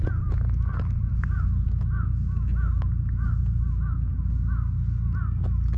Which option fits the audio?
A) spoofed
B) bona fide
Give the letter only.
B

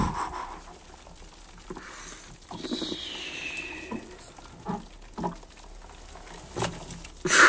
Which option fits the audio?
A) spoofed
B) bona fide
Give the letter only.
B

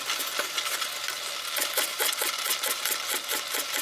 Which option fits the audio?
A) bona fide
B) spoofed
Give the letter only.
A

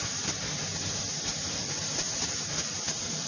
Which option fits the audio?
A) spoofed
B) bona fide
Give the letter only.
A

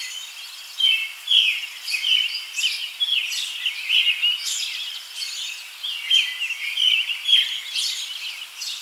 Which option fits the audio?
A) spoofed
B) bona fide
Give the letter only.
B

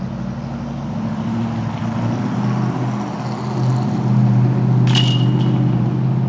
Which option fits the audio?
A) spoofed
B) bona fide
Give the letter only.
B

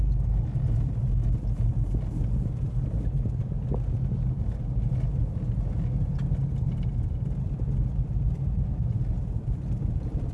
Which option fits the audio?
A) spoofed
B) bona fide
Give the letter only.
B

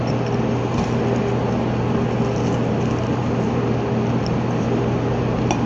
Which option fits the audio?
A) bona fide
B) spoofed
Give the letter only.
A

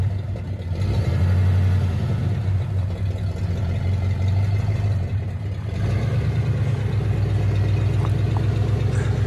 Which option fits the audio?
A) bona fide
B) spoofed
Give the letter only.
A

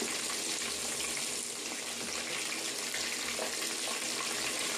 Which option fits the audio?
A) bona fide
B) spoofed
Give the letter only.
A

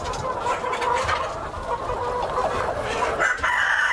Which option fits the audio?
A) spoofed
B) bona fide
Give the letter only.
B